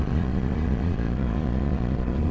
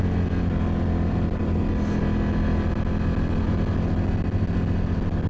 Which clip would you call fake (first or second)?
first